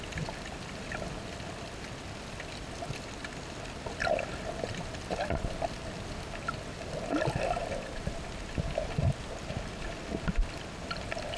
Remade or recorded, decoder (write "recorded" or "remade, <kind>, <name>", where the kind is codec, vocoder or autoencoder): recorded